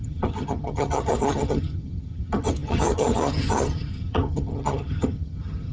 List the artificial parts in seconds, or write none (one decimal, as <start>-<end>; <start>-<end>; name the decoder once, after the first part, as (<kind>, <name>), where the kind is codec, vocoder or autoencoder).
0.0-5.7 (vocoder, HiFi-GAN)